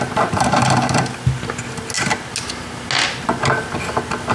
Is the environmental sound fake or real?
real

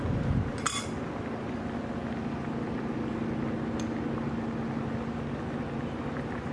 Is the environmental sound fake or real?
real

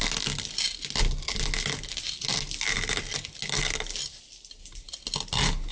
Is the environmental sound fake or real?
real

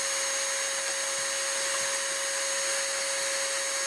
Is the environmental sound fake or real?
real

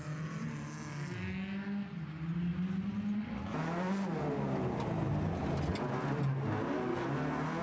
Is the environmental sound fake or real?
real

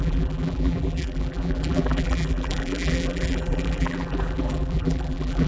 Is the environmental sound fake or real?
fake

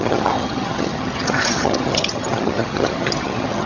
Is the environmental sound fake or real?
fake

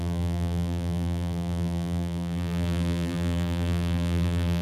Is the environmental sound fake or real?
fake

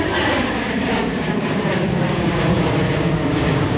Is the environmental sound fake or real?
fake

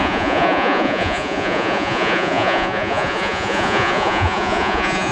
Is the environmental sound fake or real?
fake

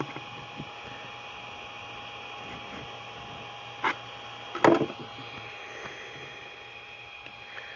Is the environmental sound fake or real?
real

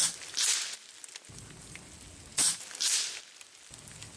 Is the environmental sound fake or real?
real